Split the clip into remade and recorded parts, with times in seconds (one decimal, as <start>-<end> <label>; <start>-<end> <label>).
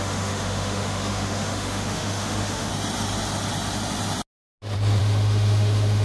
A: 0.0-2.7 remade; 2.7-5.0 recorded; 5.0-6.0 remade